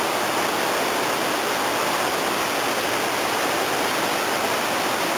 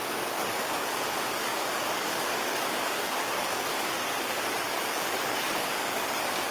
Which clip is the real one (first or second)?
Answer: first